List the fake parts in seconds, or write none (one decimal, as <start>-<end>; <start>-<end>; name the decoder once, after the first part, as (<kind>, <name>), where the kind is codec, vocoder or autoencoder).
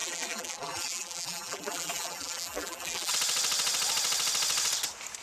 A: 0.0-3.1 (vocoder, BigVGAN v2)